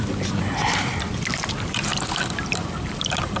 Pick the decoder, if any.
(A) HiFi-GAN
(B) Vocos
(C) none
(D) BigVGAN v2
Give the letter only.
D